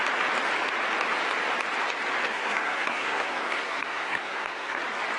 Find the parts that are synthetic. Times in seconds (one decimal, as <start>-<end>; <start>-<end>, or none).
2.2-4.8